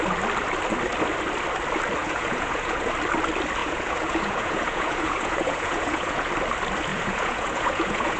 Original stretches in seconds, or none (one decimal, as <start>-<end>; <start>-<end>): 0.0-2.0; 2.9-3.6; 6.3-6.9